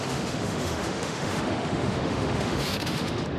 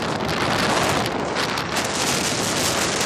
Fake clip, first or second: first